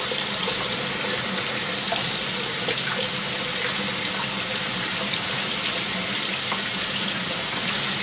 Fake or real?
fake